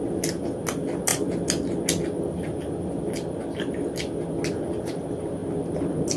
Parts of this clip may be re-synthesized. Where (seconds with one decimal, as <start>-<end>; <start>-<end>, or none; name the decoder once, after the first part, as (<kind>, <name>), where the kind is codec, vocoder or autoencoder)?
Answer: none